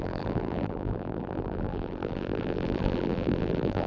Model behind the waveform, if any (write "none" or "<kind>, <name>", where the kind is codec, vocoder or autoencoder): vocoder, BigVGAN v2